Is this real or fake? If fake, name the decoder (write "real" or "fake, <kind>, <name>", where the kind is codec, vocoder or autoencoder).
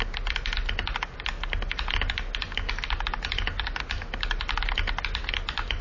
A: real